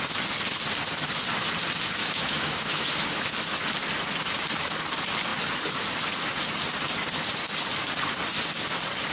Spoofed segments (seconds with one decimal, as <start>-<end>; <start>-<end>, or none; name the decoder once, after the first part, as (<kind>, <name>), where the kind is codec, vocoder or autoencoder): 2.0-3.2 (autoencoder, DAC-VAE)